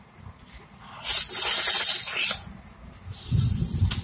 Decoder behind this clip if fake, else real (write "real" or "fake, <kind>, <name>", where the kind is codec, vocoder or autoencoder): real